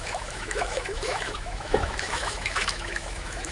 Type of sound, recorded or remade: remade